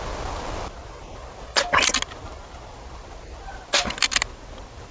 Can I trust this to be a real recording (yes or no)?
yes